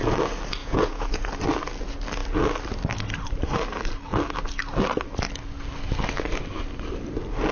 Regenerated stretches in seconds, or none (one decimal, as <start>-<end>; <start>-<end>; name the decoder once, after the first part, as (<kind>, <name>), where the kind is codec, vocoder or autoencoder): 0.6-1.3 (vocoder, Vocos)